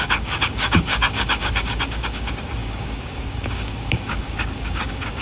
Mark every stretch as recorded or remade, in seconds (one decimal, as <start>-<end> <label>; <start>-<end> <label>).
0.0-5.2 remade